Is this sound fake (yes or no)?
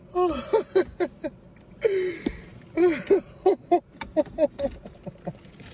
no